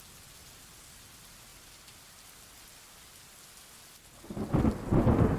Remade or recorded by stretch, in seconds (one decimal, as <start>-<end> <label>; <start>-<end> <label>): 0.0-5.4 recorded